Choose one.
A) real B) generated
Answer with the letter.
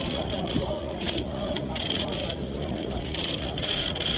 B